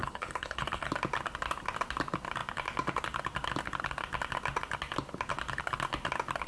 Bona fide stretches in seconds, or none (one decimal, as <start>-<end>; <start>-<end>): 0.9-6.5